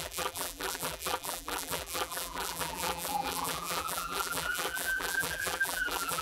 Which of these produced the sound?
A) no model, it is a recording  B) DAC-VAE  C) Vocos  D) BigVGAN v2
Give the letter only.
D